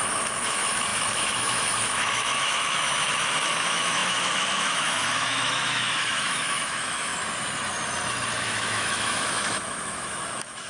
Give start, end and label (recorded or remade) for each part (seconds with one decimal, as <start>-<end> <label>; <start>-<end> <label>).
0.0-7.1 remade; 7.1-8.4 recorded; 8.4-10.7 remade